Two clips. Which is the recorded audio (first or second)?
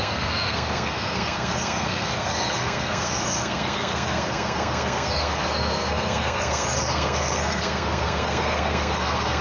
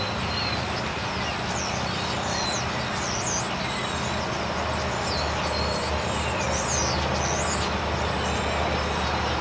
second